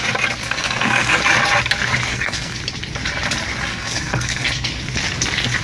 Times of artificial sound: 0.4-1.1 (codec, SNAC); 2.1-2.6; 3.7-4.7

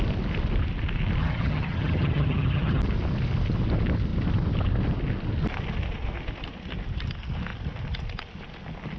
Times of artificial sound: 1.2-2.8 (vocoder, HiFi-GAN)

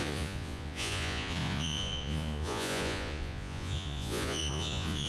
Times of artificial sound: 0.0-5.1 (vocoder, Vocos)

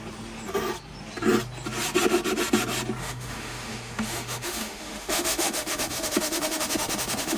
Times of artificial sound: 3.0-7.4 (autoencoder, DAC-VAE)

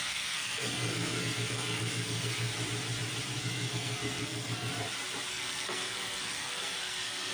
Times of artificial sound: 0.0-2.5 (codec, SNAC); 3.4-4.7; 5.3-7.3